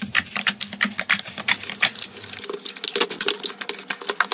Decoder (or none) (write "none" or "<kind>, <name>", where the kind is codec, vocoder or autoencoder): none